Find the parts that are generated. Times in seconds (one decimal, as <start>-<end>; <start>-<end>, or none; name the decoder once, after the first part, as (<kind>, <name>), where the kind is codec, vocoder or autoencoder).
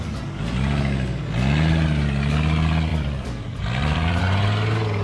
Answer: 2.9-4.2 (vocoder, BigVGAN v2)